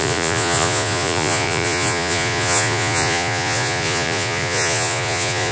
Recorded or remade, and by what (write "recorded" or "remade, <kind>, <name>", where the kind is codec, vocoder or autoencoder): remade, vocoder, Vocos